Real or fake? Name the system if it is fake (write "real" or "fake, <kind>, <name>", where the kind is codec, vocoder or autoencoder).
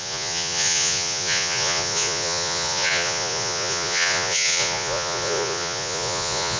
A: fake, vocoder, Vocos